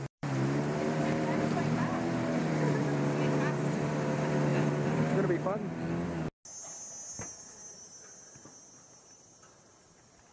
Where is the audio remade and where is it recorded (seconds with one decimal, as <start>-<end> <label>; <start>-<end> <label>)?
0.0-5.6 remade; 5.6-7.3 recorded; 7.3-10.3 remade